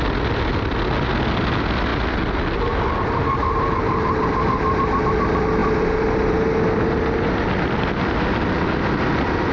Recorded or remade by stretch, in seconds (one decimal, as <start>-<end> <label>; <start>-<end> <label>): 0.0-9.5 recorded